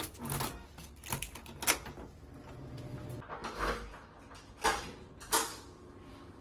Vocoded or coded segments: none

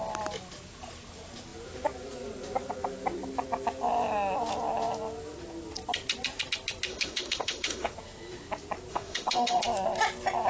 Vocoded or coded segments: 6.9-7.9 (autoencoder, DAC-VAE); 8.9-9.6

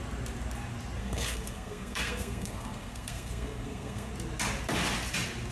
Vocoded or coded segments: 1.0-4.1 (codec, SNAC)

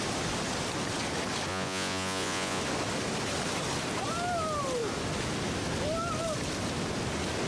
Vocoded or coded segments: 1.5-2.6 (vocoder, Vocos)

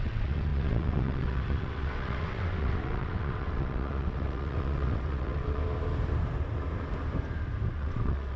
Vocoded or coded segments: 0.0-5.6 (vocoder, WaveNeXt); 7.7-8.4

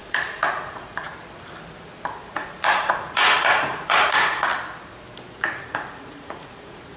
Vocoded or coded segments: 0.0-1.1 (vocoder, Vocos); 2.2-4.5; 5.3-7.0

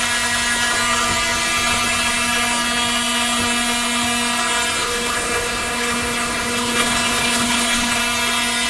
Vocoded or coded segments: 4.8-8.0 (codec, HILCodec)